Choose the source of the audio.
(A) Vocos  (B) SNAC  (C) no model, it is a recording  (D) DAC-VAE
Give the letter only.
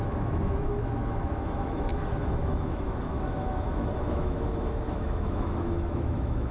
D